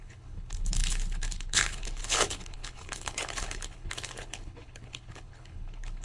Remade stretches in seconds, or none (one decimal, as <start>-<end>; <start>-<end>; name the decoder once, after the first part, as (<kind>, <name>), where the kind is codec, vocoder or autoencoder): 0.0-6.0 (codec, HILCodec)